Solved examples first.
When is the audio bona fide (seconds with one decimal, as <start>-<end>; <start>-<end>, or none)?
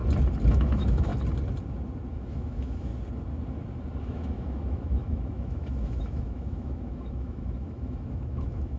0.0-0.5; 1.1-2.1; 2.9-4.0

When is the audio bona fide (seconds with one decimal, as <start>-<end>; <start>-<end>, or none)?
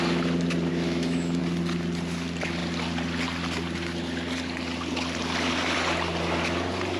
0.0-0.7; 1.4-7.0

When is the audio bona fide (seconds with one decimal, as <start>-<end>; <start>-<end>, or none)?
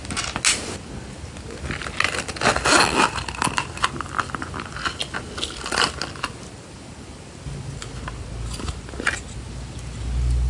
0.0-10.5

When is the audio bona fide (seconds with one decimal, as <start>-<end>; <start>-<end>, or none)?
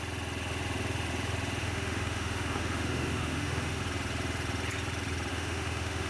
0.0-1.6; 3.8-5.3